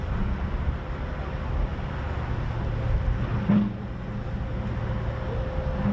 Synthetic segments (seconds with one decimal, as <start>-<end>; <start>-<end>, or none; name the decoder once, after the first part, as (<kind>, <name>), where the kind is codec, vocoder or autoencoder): none